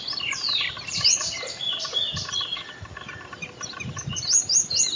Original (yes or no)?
yes